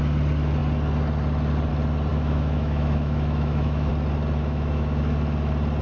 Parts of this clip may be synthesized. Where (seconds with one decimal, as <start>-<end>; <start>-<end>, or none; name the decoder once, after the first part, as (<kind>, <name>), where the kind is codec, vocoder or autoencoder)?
2.1-3.9 (autoencoder, DAC-VAE); 4.4-5.0